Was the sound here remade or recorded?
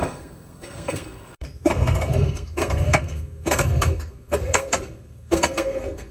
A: remade